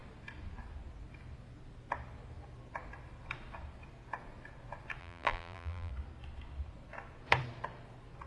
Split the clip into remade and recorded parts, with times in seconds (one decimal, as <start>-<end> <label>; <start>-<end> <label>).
0.0-5.0 recorded; 5.0-5.9 remade; 5.9-8.3 recorded